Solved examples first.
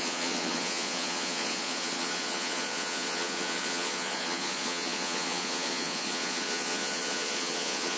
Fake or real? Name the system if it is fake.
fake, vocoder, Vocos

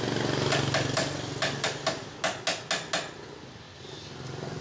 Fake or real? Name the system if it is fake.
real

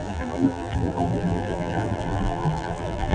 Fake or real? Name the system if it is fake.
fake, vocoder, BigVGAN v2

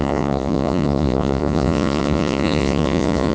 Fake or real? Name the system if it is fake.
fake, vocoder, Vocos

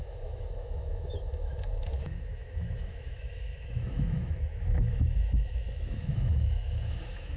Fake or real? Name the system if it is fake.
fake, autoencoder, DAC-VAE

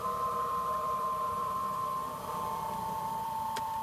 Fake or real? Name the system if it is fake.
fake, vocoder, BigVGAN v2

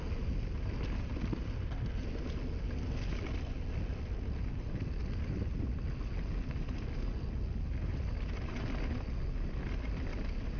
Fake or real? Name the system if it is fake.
real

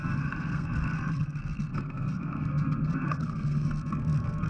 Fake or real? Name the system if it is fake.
fake, codec, SNAC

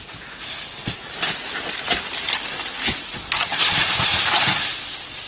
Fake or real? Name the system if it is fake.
real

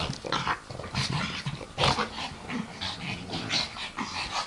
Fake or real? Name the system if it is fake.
real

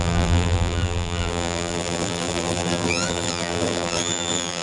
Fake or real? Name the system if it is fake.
fake, vocoder, BigVGAN v2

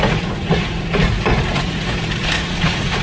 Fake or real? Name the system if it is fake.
fake, vocoder, Vocos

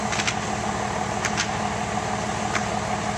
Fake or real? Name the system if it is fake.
real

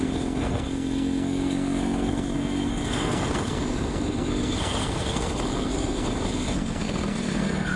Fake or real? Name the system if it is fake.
fake, codec, SNAC